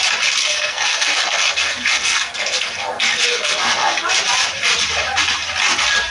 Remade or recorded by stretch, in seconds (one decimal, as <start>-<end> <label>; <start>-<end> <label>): 0.0-0.4 recorded; 0.4-4.1 remade; 4.1-6.1 recorded

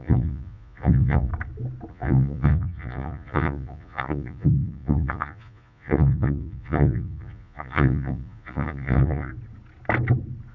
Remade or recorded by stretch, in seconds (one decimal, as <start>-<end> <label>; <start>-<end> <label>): 0.0-1.3 remade; 1.3-1.9 recorded; 1.9-9.3 remade; 9.3-10.5 recorded

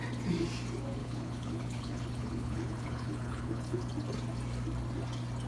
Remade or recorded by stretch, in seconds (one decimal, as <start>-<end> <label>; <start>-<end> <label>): 0.0-1.0 recorded; 1.0-3.8 remade; 3.8-5.5 recorded

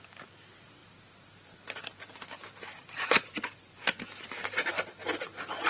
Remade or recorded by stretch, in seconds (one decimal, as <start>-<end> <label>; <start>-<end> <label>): 0.0-5.0 remade; 5.0-5.7 recorded

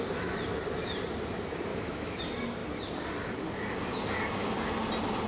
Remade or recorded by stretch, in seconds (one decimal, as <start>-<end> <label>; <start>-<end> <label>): 0.0-1.7 recorded; 1.7-2.2 remade; 2.2-5.3 recorded

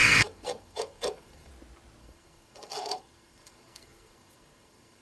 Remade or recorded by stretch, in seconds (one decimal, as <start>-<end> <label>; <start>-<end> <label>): 0.0-1.5 remade; 1.5-2.0 recorded; 2.0-5.0 remade

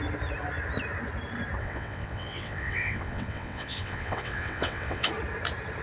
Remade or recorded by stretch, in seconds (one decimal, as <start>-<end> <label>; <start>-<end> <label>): 0.0-1.6 recorded; 1.6-5.1 remade; 5.1-5.8 recorded